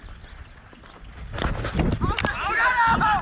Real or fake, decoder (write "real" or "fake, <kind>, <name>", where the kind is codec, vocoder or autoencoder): real